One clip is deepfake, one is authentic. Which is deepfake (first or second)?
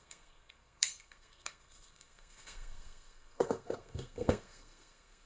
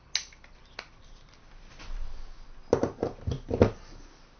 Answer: first